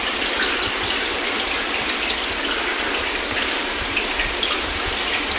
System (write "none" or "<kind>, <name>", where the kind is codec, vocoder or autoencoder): none